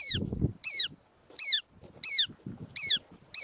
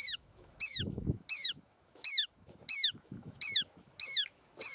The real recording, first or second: first